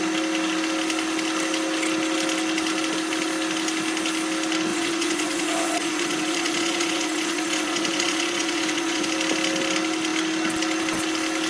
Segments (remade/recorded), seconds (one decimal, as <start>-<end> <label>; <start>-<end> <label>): 0.0-4.7 recorded; 4.7-9.1 remade; 9.1-11.5 recorded